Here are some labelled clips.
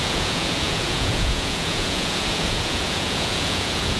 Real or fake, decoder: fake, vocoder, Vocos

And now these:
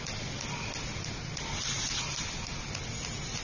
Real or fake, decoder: real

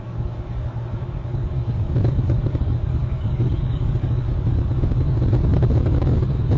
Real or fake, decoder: fake, codec, DAC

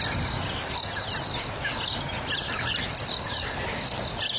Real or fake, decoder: real